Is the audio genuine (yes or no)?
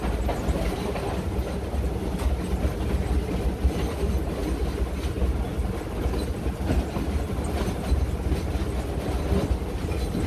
yes